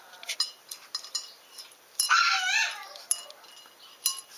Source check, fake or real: real